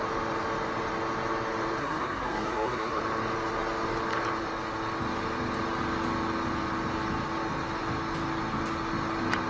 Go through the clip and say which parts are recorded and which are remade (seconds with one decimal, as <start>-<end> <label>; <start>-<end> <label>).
0.0-1.8 recorded; 1.8-3.0 remade; 3.0-9.5 recorded